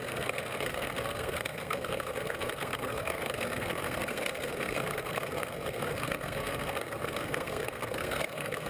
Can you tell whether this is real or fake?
fake